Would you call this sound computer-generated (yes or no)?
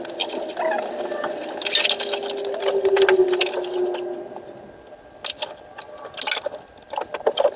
no